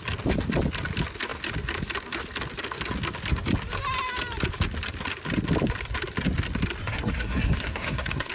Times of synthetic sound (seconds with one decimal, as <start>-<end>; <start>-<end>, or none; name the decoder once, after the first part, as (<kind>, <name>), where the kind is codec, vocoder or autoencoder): 6.8-8.3 (codec, SNAC)